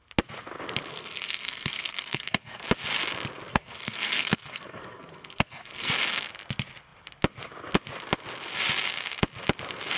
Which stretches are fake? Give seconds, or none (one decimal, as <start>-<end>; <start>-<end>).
0.9-2.6; 3.5-5.9